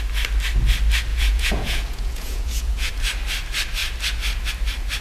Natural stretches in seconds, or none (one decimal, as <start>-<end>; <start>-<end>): 0.0-1.1; 2.9-5.0